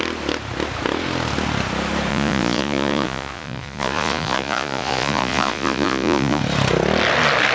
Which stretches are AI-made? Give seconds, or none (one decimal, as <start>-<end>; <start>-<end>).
2.1-6.4